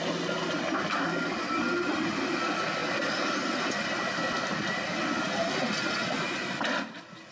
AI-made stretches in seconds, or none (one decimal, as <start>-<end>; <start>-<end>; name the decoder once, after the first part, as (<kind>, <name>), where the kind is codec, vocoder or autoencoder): 0.6-2.8 (vocoder, BigVGAN v2); 6.2-7.3